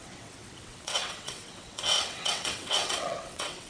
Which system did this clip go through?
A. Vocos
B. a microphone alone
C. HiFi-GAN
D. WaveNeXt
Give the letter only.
D